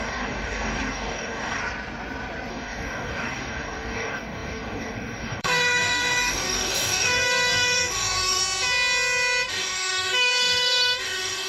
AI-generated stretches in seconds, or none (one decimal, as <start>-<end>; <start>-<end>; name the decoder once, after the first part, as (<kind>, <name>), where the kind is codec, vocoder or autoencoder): 0.0-1.6 (codec, DAC); 2.5-8.4; 9.5-11.5